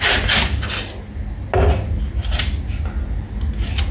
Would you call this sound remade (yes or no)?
no